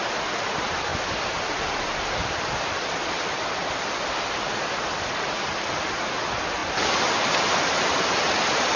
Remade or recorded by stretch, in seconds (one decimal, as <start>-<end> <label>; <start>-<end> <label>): 0.0-0.9 recorded; 0.9-3.5 remade; 3.5-8.8 recorded